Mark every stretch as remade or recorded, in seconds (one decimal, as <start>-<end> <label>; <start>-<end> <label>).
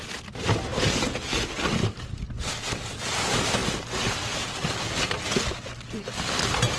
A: 0.0-6.8 recorded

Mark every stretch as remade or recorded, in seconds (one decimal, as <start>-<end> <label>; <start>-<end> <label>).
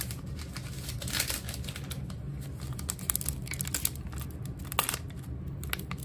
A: 0.0-6.0 recorded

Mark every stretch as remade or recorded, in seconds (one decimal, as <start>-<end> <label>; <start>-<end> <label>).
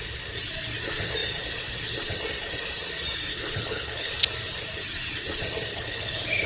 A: 0.0-3.3 recorded; 3.3-4.1 remade; 4.1-5.7 recorded; 5.7-6.5 remade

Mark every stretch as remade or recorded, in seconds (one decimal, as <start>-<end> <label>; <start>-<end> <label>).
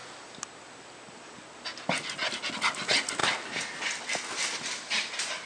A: 0.0-5.5 recorded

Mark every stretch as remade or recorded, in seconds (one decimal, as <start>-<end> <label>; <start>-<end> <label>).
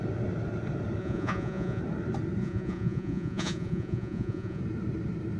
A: 0.0-1.0 recorded; 1.0-1.8 remade; 1.8-2.4 recorded; 2.4-4.6 remade; 4.6-5.4 recorded